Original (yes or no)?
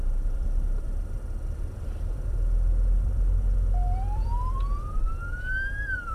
no